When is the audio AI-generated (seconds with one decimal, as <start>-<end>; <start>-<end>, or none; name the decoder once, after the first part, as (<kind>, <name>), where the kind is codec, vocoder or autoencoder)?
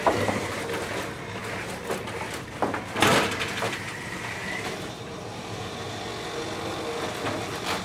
4.4-6.0 (vocoder, BigVGAN v2)